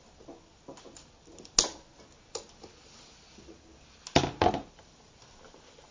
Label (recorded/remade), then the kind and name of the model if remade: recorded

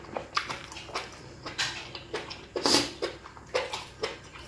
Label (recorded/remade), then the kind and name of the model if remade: recorded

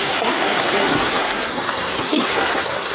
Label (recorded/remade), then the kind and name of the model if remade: remade, codec, SNAC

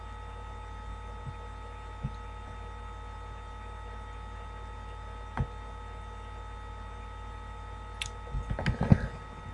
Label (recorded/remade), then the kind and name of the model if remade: recorded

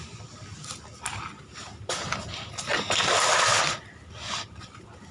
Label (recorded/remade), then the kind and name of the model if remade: recorded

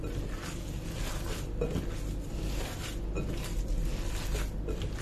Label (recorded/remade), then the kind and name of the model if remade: recorded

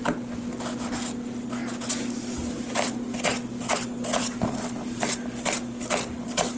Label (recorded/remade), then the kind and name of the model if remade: recorded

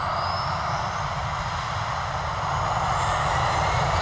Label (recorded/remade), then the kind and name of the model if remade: recorded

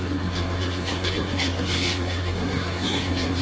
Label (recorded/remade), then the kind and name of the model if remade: remade, codec, SNAC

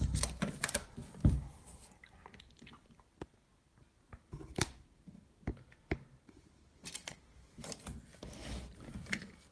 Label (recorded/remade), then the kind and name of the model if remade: recorded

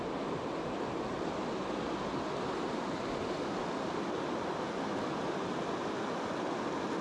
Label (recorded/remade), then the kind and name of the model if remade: recorded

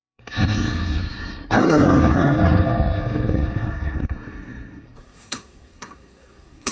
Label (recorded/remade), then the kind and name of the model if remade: remade, codec, SNAC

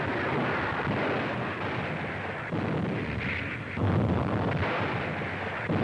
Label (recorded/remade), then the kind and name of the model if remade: recorded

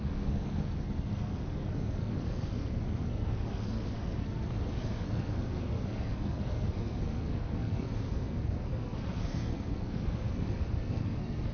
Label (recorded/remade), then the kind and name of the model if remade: remade, codec, SNAC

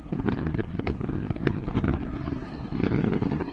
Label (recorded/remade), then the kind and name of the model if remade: remade, codec, SNAC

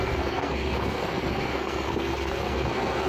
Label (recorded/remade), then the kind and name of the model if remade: remade, codec, SNAC